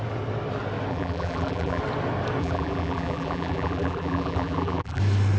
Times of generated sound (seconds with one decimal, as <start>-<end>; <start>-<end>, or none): 0.9-1.8; 2.4-5.0